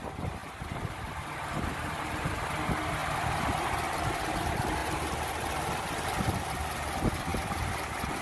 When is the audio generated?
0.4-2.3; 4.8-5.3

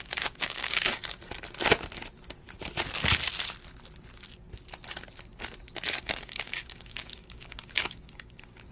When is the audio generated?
0.0-1.0; 6.0-8.7

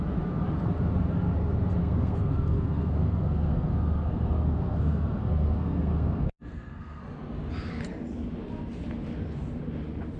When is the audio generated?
1.8-7.0

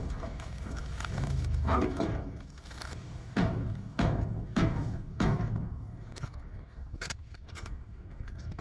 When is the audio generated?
0.0-8.6

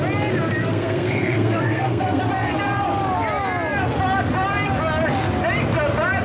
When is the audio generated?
0.6-2.2

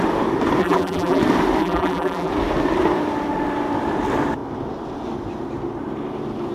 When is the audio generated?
0.6-1.2; 1.6-2.3

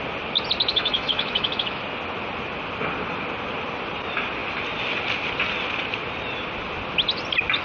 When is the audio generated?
0.7-1.8

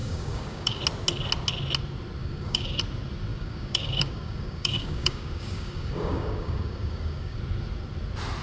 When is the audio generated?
0.0-0.8; 2.2-2.8; 3.3-7.4